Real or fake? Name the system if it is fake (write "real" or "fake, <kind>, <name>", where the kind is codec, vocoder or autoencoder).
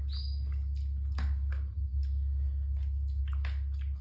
real